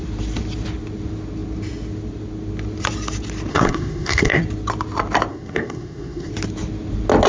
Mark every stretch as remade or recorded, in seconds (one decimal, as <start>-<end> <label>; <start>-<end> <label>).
0.0-3.5 recorded; 3.5-4.4 remade; 4.4-5.3 recorded; 5.3-6.3 remade; 6.3-7.3 recorded